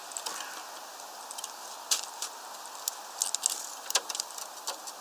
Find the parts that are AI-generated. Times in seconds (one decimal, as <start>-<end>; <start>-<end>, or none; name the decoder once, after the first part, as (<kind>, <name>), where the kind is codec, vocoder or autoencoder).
none